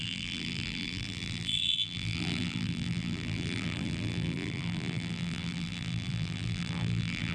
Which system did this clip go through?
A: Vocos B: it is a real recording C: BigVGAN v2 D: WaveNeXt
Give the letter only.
C